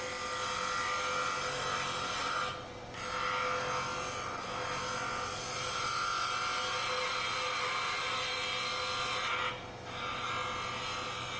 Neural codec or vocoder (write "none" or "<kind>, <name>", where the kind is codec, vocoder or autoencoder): none